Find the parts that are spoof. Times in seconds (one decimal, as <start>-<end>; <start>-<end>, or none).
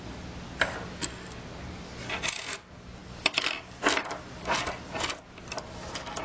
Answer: none